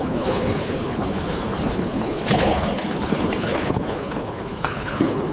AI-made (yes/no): yes